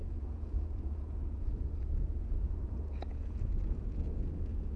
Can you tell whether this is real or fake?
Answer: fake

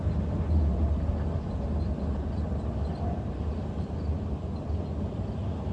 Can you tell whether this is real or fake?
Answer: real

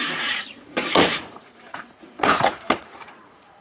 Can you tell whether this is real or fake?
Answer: fake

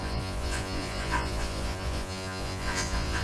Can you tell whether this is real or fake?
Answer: fake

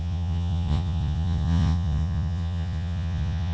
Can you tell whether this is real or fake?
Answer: fake